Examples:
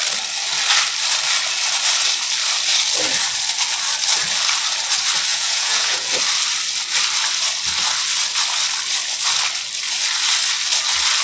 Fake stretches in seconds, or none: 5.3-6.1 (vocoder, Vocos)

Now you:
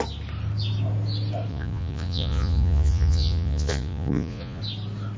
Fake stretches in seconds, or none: 1.5-4.6 (vocoder, Vocos)

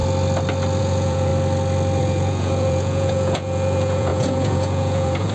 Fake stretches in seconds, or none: 0.8-1.3 (vocoder, Vocos); 2.0-5.3

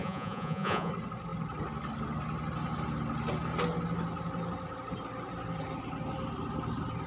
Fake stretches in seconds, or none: 0.0-0.9 (vocoder, Vocos)

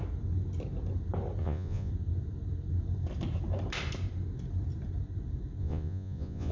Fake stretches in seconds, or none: 1.4-1.9 (vocoder, Vocos); 5.6-6.5

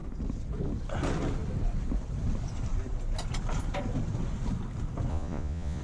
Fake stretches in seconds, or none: 5.1-5.8 (vocoder, Vocos)

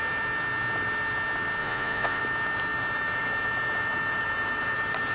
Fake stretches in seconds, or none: 1.6-2.2 (vocoder, Vocos)